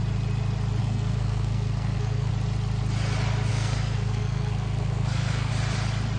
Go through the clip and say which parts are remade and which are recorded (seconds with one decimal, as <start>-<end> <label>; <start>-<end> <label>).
0.0-0.8 recorded; 0.8-2.3 remade; 2.3-3.5 recorded; 3.5-5.5 remade; 5.5-6.2 recorded